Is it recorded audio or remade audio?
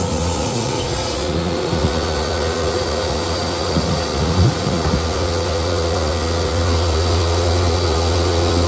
remade